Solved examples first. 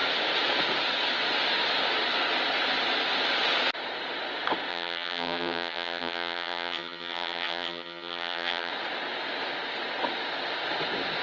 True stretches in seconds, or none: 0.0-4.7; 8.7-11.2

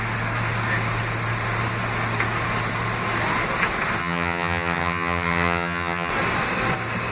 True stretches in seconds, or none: 0.0-4.0; 6.1-7.1

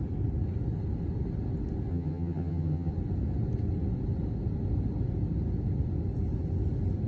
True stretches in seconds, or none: 0.0-1.9; 2.9-7.1

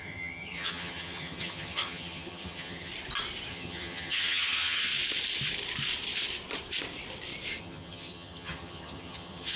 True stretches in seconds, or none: 2.9-3.5; 4.9-7.6

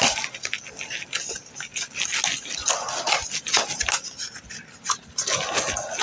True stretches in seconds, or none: 0.0-6.0

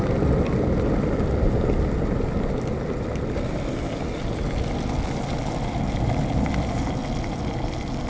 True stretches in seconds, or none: 0.0-8.1

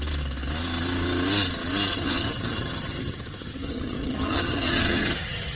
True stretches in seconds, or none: 0.0-1.9